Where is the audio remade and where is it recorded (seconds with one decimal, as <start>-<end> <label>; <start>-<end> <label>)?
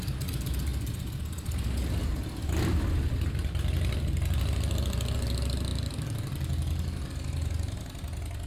0.0-5.7 recorded; 5.7-7.1 remade; 7.1-8.5 recorded